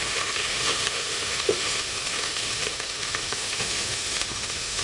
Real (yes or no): no